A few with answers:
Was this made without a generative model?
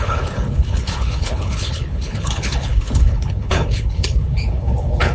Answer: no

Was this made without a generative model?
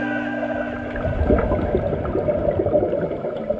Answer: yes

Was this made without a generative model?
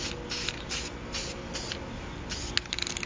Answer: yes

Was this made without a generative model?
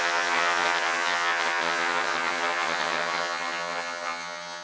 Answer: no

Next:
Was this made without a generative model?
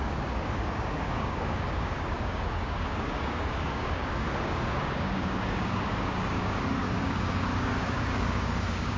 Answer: no